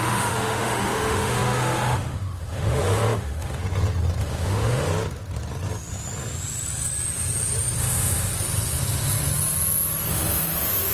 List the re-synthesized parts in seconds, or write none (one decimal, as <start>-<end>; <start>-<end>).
0.0-3.6; 4.2-4.9; 7.8-8.3; 10.1-10.9